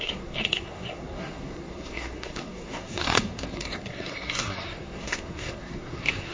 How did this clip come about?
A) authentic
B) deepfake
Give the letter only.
B